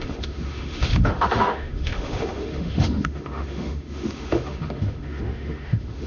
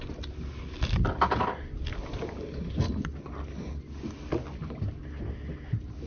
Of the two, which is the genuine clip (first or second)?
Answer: second